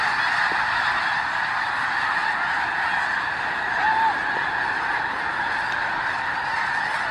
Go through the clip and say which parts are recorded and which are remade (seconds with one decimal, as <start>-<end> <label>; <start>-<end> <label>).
0.0-7.1 recorded